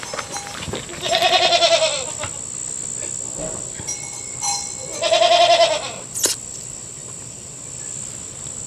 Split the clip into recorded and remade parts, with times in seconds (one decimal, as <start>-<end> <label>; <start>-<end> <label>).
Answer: 0.0-0.9 remade; 0.9-6.1 recorded; 6.1-8.7 remade